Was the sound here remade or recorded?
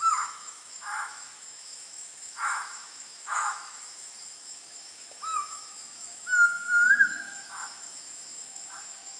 remade